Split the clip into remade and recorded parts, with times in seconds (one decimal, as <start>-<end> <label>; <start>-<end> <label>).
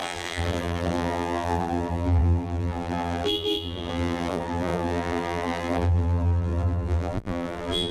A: 0.0-7.9 remade